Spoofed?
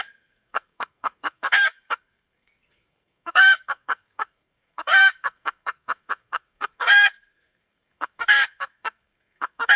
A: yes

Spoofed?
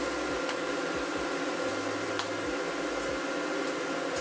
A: no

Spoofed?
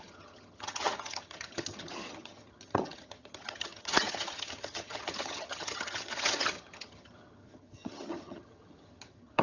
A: yes